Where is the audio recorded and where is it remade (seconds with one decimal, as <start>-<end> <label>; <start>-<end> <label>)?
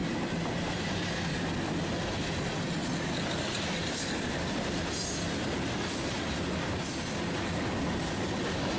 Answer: 0.0-8.8 recorded